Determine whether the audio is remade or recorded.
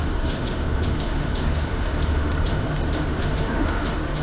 remade